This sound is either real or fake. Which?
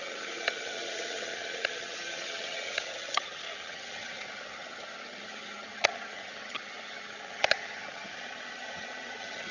fake